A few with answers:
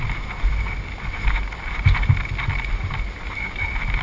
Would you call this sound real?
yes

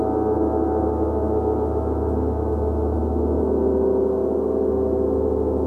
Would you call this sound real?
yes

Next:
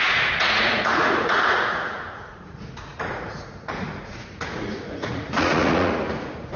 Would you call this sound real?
no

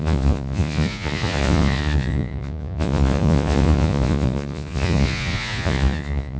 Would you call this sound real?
no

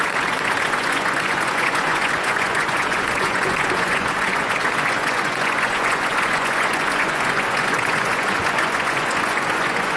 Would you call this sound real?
no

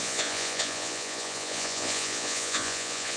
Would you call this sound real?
no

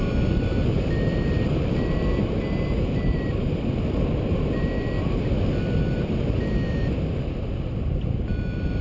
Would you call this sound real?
yes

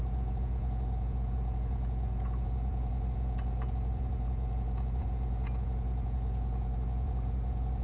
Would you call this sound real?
no